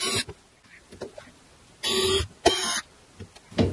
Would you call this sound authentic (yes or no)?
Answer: yes